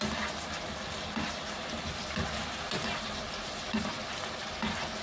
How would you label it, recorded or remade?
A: recorded